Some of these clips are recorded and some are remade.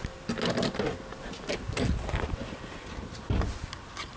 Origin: recorded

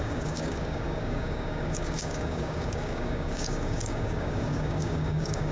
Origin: remade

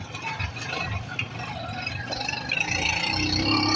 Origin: recorded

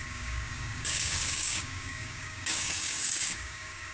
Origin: remade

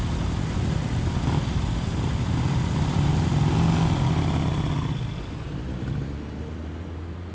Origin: recorded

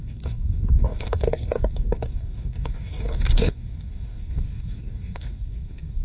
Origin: remade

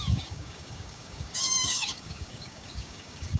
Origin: remade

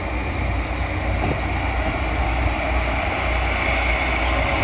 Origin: recorded